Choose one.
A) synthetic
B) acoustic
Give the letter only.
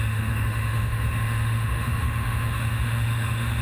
A